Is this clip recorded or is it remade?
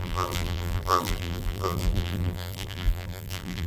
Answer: remade